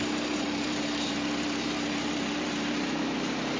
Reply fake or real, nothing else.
fake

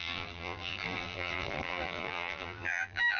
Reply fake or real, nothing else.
fake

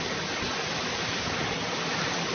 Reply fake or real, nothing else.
fake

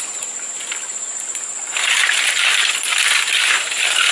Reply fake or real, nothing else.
real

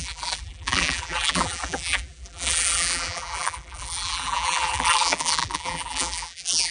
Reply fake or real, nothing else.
fake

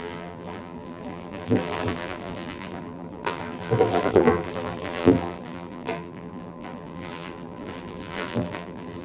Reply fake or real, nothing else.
fake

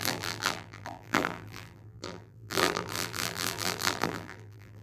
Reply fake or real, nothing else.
fake